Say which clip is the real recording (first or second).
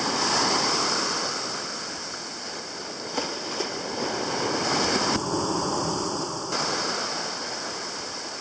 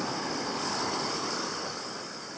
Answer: first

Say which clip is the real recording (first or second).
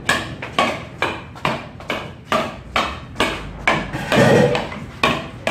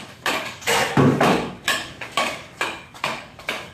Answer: first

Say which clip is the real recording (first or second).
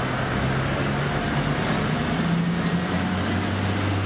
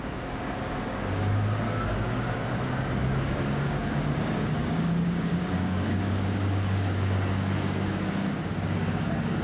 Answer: first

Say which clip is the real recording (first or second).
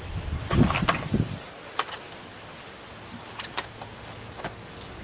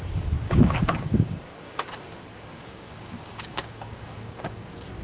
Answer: first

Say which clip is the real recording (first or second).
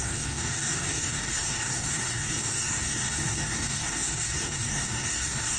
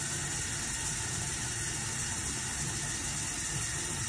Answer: second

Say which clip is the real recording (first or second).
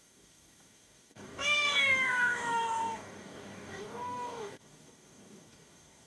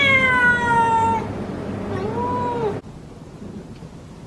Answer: second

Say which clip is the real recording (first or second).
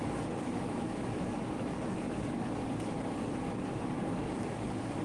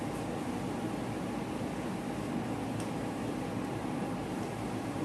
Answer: second